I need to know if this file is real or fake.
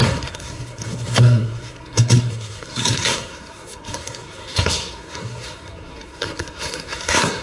fake